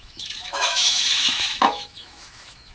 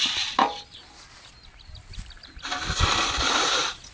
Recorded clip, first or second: second